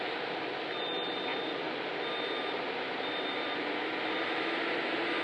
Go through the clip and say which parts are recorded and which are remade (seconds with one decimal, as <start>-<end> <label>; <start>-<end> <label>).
0.0-5.2 recorded